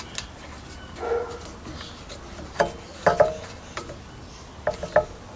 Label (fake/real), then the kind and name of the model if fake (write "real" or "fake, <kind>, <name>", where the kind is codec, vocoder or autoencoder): real